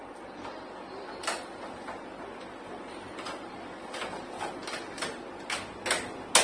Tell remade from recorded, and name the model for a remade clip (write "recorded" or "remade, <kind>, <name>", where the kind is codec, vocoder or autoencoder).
recorded